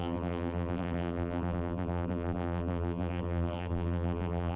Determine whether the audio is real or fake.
fake